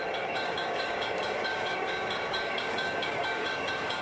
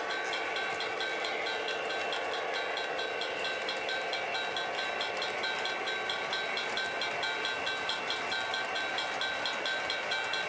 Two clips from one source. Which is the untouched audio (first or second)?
second